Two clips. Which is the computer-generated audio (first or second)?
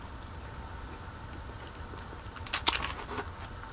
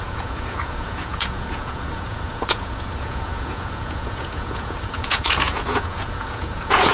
second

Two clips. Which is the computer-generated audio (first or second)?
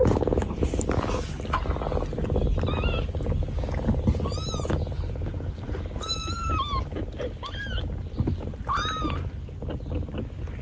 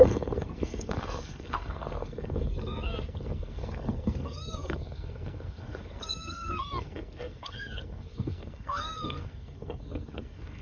second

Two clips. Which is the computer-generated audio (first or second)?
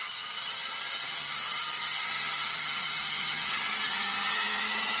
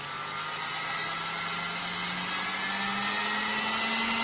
first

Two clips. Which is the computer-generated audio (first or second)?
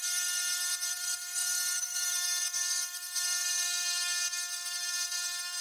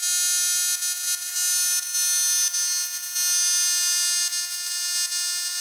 first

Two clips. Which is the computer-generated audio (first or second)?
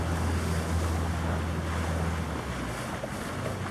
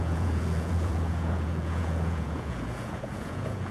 second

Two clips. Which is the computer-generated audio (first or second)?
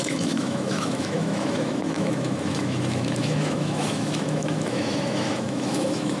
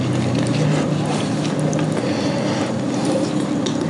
first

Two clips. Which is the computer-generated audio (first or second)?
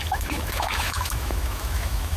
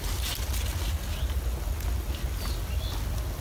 first